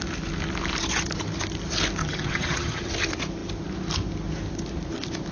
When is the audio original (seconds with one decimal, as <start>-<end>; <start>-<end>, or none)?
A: 0.0-2.0; 2.9-5.3